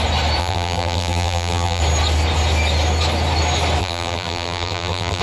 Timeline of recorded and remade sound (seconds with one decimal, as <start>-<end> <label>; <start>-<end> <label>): 0.0-0.4 recorded; 0.4-1.8 remade; 1.8-3.8 recorded; 3.8-5.2 remade